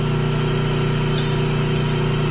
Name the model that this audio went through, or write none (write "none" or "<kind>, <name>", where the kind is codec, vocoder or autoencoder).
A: none